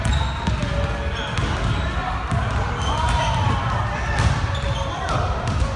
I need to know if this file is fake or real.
real